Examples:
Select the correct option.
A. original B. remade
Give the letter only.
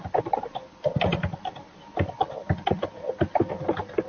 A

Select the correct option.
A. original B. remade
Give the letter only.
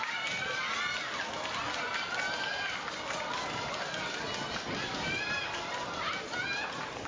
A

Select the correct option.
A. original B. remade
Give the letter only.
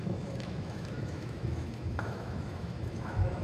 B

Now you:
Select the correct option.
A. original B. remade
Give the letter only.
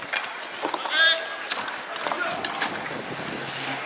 A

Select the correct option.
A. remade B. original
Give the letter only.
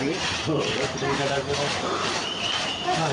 B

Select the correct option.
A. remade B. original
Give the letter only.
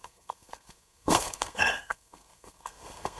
A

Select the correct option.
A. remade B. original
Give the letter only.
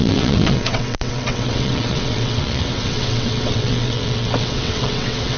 A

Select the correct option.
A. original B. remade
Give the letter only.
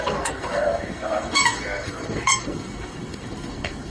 B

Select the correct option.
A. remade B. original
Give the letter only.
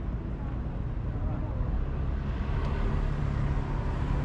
B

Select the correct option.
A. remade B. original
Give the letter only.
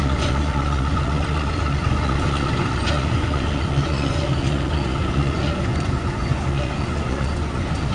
A